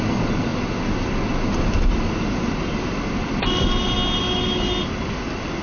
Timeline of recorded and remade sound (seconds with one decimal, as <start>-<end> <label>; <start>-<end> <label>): 0.0-5.6 recorded